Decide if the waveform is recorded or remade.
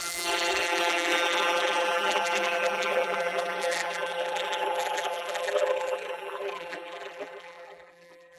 remade